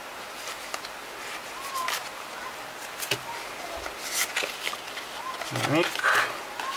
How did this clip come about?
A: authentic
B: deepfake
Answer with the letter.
A